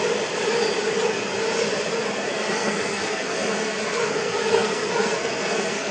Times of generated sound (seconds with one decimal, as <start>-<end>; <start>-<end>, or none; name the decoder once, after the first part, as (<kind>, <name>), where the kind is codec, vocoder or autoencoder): 2.3-5.9 (codec, SNAC)